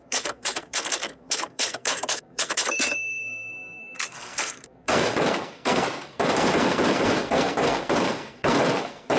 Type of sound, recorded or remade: remade